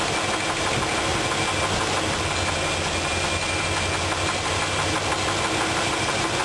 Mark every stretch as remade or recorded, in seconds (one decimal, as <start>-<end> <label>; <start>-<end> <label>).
0.0-6.4 recorded